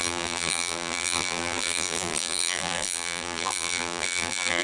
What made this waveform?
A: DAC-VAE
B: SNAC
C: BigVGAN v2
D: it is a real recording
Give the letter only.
C